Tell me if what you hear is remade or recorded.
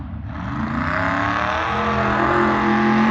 recorded